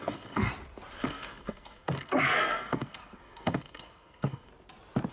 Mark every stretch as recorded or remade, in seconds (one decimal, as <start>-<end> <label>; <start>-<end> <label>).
0.0-0.5 remade; 0.5-1.0 recorded; 1.0-4.5 remade; 4.5-5.1 recorded